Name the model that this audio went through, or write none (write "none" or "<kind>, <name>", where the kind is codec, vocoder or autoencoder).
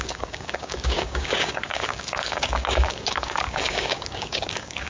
codec, DAC